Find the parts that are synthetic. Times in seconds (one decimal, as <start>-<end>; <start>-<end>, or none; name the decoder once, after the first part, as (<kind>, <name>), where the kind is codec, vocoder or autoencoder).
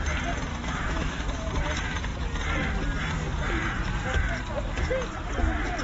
0.5-1.5 (autoencoder, DAC-VAE)